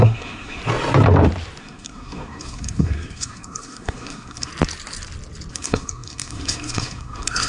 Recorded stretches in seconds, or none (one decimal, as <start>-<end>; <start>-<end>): 0.6-1.6; 4.5-5.5